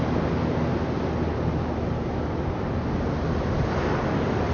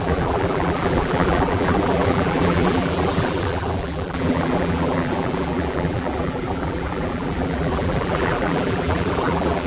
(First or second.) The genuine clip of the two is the first